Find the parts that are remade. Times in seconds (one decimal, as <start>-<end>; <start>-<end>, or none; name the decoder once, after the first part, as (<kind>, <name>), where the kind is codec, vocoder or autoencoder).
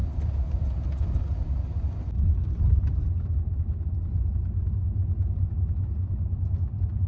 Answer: none